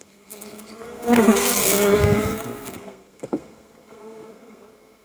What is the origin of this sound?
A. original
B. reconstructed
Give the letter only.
B